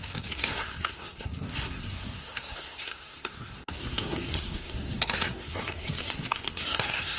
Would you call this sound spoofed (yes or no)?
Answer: yes